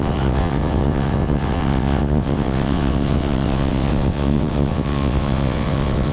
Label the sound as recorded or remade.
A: remade